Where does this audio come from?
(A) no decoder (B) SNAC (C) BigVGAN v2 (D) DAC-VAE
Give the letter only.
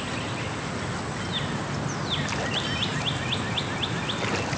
A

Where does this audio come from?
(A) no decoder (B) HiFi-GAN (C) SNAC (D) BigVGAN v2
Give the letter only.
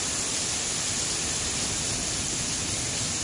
A